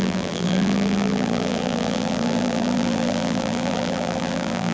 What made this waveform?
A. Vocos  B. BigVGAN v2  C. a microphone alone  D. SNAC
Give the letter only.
B